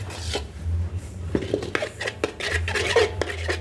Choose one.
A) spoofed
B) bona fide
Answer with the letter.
B